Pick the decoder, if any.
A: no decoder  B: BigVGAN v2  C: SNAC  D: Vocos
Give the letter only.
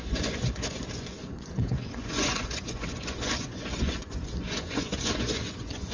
D